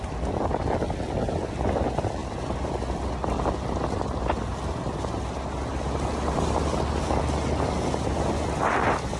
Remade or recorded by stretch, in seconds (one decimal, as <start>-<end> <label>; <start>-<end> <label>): 0.0-9.2 recorded